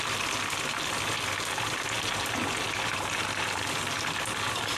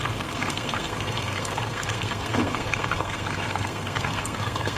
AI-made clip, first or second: second